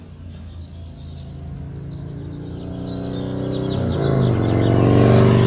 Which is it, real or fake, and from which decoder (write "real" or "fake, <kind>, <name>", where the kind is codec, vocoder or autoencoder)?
real